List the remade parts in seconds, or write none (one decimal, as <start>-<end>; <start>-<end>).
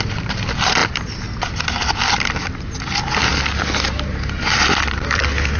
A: none